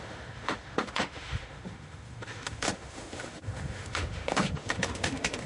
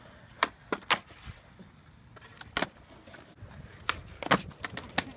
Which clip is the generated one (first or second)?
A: first